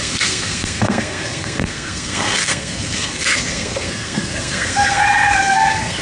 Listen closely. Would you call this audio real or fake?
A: fake